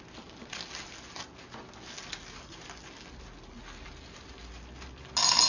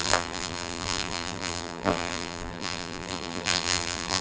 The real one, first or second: first